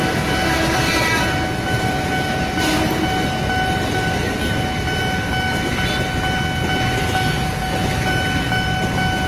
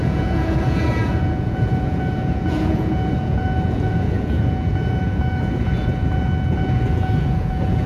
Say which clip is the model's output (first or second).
second